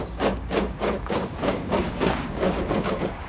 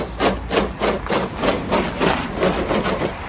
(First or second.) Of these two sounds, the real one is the second